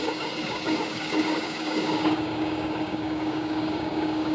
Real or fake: fake